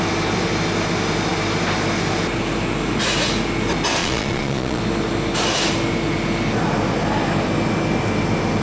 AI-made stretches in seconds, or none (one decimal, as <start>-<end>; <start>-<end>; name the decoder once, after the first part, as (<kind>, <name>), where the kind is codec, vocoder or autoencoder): 4.0-4.8 (vocoder, Vocos)